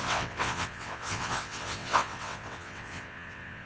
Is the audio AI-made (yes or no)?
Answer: yes